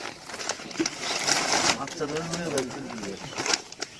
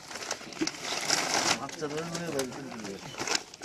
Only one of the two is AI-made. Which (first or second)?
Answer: first